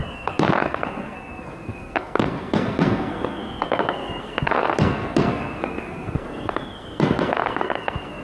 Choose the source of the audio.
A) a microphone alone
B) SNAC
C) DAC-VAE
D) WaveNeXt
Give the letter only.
B